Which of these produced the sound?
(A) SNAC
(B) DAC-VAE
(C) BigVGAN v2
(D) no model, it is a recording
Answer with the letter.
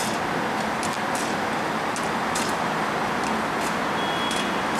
D